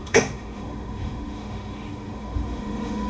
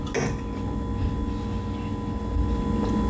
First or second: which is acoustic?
second